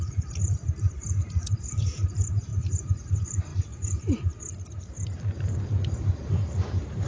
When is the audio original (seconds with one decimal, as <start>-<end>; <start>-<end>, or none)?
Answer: none